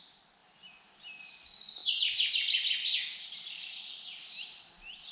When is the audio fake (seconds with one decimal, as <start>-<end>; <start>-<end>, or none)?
none